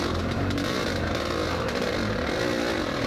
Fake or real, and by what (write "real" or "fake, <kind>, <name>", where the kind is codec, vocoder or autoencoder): real